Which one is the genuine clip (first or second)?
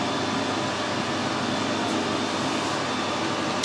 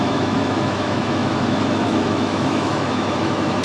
first